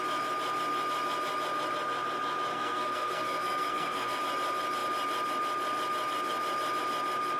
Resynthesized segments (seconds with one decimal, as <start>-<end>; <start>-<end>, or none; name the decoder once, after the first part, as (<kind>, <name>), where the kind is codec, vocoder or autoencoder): 2.5-4.2 (codec, SNAC)